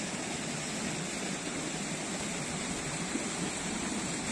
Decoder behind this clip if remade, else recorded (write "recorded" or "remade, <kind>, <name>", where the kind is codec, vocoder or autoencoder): recorded